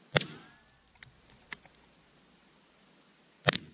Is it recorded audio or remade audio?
recorded